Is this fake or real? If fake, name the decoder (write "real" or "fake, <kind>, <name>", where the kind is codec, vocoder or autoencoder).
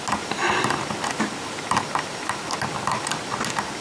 real